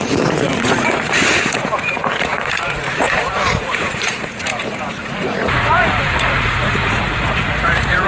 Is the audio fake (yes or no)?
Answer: yes